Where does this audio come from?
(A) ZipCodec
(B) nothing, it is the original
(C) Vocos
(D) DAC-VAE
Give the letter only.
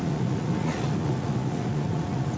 C